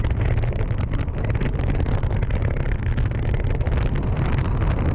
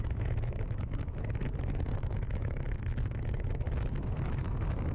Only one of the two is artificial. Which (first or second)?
second